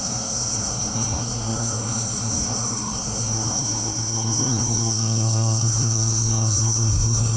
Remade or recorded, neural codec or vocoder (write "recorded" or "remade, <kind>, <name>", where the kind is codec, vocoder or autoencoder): remade, codec, SNAC